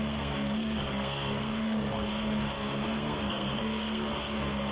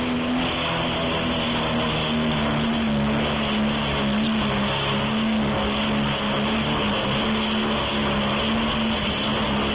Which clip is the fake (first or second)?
first